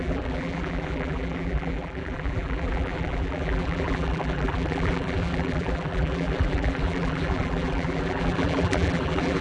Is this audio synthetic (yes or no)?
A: yes